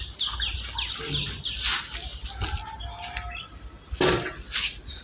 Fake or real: real